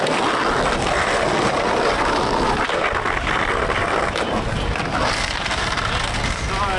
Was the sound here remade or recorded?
recorded